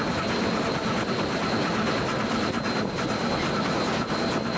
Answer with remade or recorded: recorded